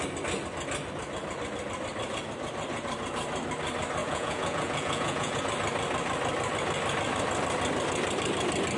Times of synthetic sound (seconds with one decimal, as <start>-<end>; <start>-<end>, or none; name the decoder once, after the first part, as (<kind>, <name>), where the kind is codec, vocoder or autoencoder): 4.0-5.4 (vocoder, Vocos)